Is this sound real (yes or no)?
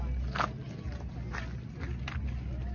yes